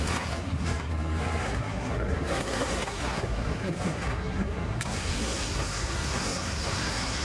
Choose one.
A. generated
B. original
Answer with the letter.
A